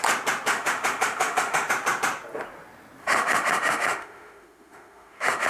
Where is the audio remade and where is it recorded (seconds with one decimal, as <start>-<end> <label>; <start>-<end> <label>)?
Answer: 0.0-0.5 recorded; 0.5-1.7 remade; 1.7-3.0 recorded; 3.0-5.5 remade